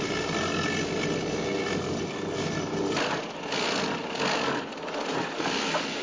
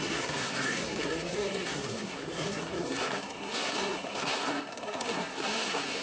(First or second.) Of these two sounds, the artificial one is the second